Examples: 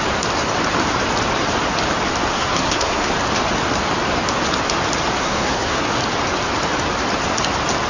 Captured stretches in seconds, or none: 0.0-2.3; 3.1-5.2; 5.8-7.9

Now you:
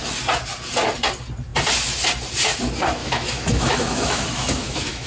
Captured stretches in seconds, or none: 0.0-3.0

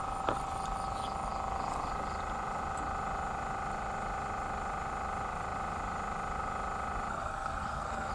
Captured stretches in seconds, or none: 0.0-7.1